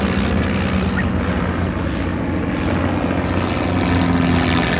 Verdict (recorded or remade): recorded